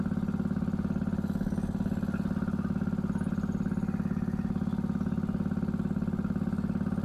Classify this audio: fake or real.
real